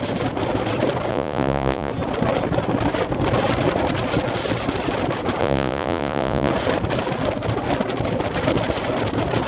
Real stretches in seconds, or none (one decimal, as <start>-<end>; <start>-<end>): 0.0-1.1; 1.9-5.4; 6.5-9.5